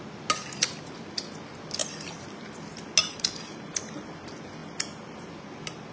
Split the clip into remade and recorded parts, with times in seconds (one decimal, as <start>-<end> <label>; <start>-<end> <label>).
0.0-5.9 recorded